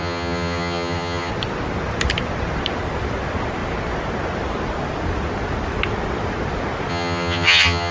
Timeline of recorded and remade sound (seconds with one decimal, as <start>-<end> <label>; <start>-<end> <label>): 0.0-1.3 remade; 1.3-6.9 recorded; 6.9-7.9 remade